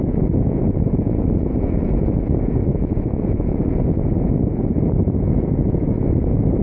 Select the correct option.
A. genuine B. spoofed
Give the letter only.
B